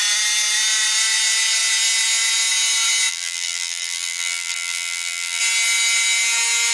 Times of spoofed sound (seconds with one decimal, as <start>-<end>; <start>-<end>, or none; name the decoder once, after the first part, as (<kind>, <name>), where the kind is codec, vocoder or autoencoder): 3.1-5.4 (vocoder, BigVGAN v2)